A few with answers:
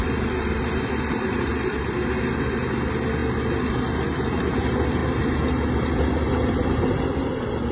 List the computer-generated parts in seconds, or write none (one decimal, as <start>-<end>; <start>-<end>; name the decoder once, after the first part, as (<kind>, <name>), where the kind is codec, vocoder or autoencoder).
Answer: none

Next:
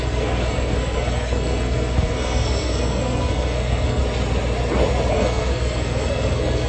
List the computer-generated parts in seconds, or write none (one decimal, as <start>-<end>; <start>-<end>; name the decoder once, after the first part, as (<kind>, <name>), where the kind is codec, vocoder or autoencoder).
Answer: 0.0-4.0 (codec, SNAC); 5.1-6.7

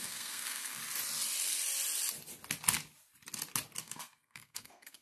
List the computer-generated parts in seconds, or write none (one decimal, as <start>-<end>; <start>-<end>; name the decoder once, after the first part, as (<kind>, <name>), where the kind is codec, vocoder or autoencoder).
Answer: 0.0-0.8 (codec, SNAC); 3.8-5.0